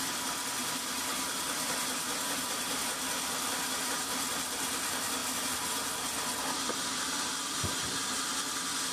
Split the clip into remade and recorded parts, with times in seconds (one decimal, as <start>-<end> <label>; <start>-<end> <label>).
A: 0.0-8.9 recorded